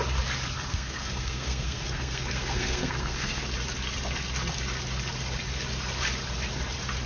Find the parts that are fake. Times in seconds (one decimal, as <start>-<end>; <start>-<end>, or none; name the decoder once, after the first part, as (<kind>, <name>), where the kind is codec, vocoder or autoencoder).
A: 0.7-3.4 (codec, SNAC)